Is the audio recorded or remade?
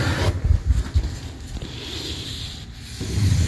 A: recorded